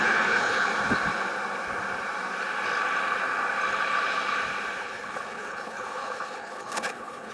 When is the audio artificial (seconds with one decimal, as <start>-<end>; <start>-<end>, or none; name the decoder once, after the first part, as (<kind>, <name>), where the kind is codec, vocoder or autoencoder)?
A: 0.0-0.7 (codec, HILCodec); 4.8-7.3